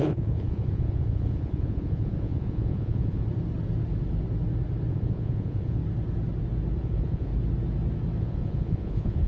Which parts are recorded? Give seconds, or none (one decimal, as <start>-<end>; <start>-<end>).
3.2-4.9; 5.8-6.8; 7.3-8.2